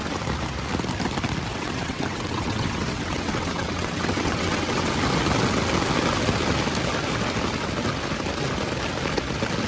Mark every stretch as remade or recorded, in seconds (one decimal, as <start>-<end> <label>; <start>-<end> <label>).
0.0-1.5 recorded; 1.5-4.9 remade; 4.9-9.7 recorded